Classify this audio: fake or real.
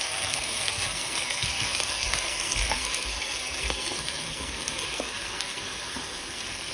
fake